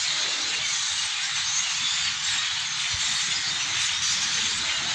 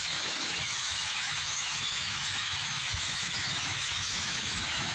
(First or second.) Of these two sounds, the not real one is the second